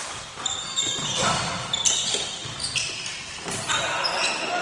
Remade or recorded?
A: remade